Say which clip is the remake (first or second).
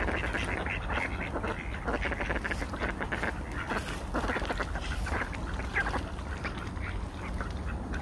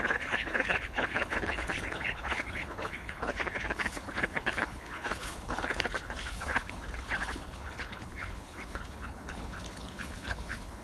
second